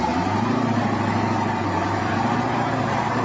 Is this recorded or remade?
remade